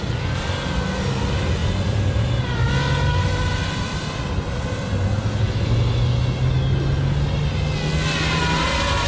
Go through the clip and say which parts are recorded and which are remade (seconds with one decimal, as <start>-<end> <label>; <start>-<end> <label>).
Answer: 0.0-1.6 recorded; 1.6-3.0 remade; 3.0-9.1 recorded